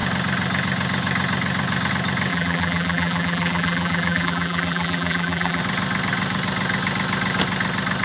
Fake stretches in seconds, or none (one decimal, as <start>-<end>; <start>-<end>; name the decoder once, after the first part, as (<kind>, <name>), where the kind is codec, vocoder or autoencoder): 2.3-5.6 (vocoder, BigVGAN v2)